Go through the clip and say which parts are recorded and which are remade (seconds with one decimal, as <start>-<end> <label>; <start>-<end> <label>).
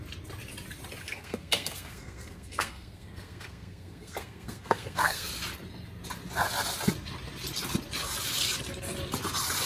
0.0-1.0 recorded; 1.0-5.3 remade; 5.3-9.7 recorded